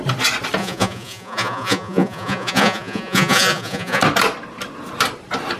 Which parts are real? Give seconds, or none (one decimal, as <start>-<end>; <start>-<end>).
0.0-0.6; 4.0-5.6